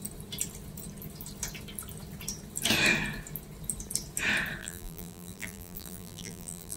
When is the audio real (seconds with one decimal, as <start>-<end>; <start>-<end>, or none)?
0.0-4.6